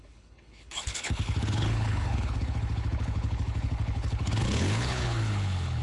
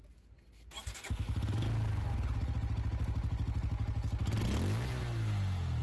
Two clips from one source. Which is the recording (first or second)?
second